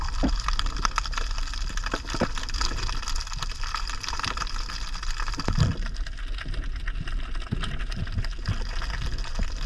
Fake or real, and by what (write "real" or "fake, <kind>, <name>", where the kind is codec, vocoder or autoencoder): real